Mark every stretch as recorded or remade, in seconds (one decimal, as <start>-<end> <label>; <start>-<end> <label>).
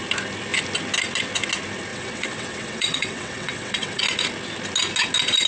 0.0-1.9 recorded; 1.9-4.0 remade; 4.0-5.5 recorded